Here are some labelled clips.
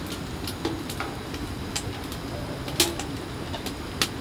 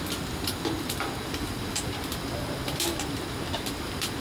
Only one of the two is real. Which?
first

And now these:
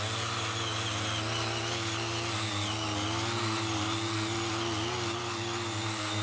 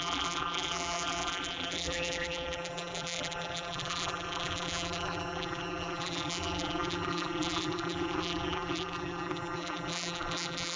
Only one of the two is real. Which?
first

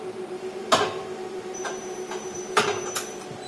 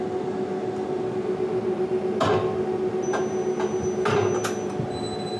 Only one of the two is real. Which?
second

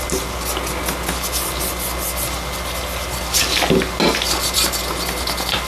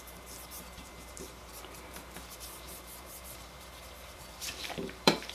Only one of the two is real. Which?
first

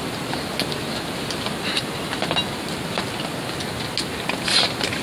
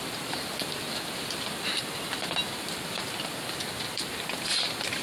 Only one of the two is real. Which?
first